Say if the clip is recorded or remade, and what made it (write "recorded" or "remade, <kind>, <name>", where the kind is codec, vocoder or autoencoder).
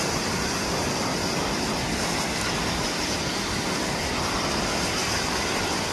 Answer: recorded